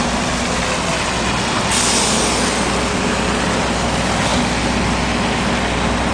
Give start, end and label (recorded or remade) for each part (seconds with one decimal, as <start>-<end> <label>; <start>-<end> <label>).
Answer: 0.0-6.1 recorded